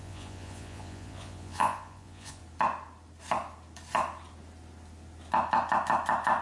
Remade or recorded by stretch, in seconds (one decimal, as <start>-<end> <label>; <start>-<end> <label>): 0.0-2.4 remade; 2.4-6.4 recorded